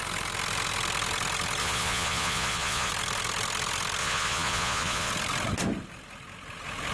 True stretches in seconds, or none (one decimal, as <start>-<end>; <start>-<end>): 0.0-1.6; 2.9-4.0; 5.1-6.9